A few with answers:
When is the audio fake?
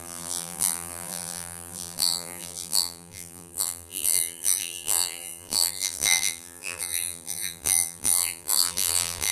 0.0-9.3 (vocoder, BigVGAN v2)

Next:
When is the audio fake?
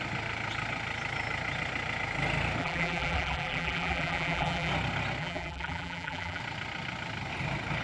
2.6-4.7 (vocoder, BigVGAN v2); 5.2-6.4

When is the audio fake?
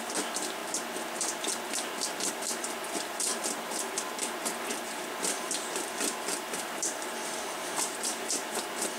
0.0-0.6 (vocoder, BigVGAN v2); 2.3-3.3; 5.4-9.0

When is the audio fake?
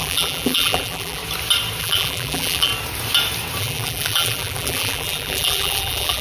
0.0-1.2 (vocoder, BigVGAN v2); 1.8-2.7; 3.6-6.2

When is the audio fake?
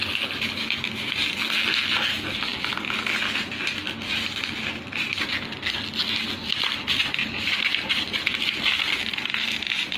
7.2-8.3 (vocoder, BigVGAN v2); 9.1-10.0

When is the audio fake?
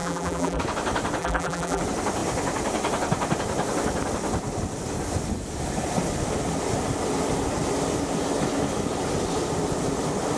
0.0-0.6 (vocoder, BigVGAN v2); 1.2-1.8